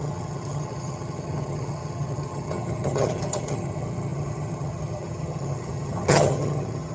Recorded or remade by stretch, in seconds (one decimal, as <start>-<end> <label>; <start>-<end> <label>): 0.0-6.9 remade